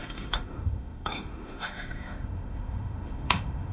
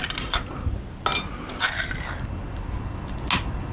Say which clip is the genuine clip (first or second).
second